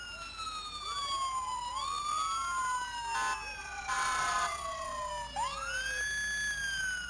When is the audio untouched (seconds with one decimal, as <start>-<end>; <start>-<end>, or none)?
0.0-3.6; 5.1-7.1

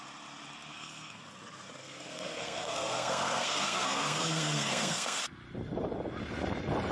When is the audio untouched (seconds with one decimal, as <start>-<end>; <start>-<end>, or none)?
0.0-0.7; 1.2-1.8; 5.2-6.9

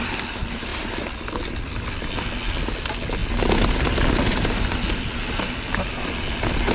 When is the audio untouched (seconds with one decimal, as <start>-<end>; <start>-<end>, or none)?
0.0-6.7

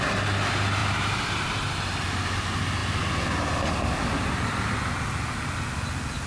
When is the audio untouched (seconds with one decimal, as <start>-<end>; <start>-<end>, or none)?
0.0-6.3

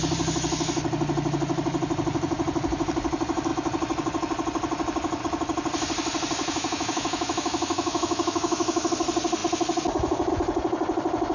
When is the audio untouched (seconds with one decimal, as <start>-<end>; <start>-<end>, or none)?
0.0-6.4; 8.9-11.3

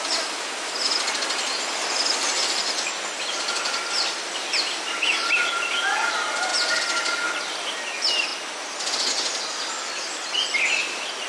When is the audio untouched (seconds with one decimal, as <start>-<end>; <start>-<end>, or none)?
0.0-11.3

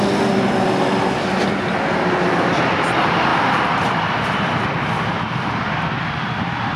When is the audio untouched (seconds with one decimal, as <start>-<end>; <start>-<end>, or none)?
0.0-3.3; 5.1-6.8